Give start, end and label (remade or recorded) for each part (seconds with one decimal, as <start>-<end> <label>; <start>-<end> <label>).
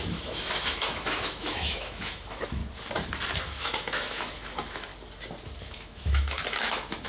0.0-2.6 remade; 2.6-3.4 recorded; 3.4-4.9 remade; 4.9-5.6 recorded; 5.6-7.1 remade